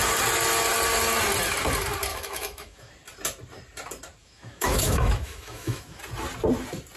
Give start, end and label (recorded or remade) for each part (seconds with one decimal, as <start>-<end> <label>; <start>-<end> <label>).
0.0-2.1 recorded; 2.1-2.9 remade; 2.9-4.2 recorded; 4.2-6.0 remade; 6.0-7.0 recorded